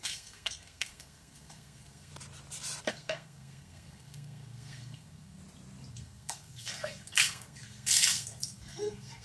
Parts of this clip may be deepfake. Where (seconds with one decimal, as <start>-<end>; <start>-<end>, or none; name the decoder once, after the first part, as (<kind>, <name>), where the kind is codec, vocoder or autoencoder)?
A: 0.0-2.1 (codec, SNAC); 2.9-5.4; 5.9-9.2